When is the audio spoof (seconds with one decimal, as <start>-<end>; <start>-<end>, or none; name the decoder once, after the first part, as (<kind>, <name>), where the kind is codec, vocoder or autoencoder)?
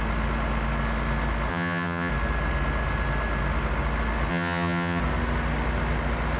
1.5-2.1 (vocoder, HiFi-GAN); 4.3-5.0